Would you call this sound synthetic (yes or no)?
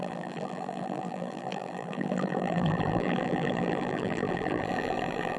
yes